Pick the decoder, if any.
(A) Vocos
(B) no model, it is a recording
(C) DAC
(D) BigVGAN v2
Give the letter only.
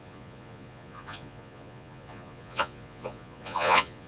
A